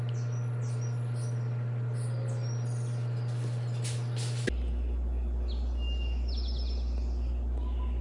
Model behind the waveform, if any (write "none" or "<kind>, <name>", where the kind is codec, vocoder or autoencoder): none